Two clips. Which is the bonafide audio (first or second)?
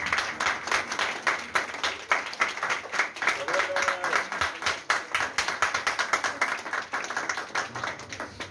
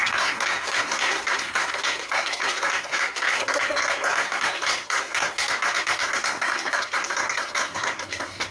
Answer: first